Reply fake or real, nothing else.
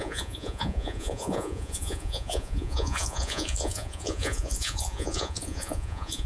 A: fake